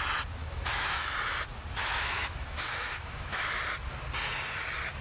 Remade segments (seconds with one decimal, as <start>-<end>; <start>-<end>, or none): 0.4-1.0; 1.8-3.6